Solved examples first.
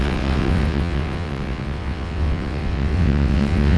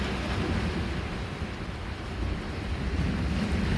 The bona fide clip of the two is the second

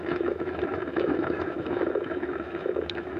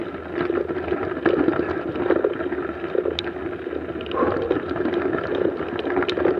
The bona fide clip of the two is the second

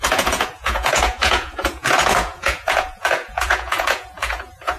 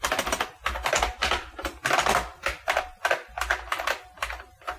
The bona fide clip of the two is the second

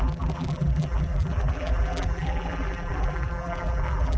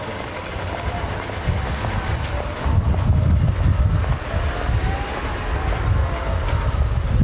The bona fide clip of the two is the second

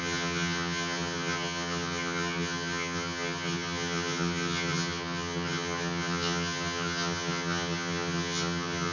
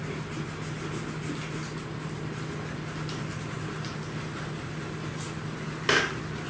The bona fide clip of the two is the second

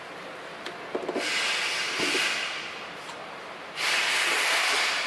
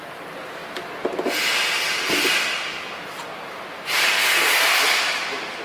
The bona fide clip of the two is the second